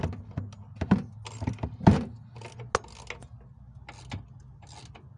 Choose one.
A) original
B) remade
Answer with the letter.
A